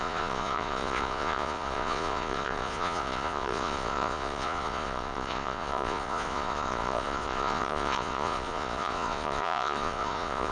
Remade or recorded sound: remade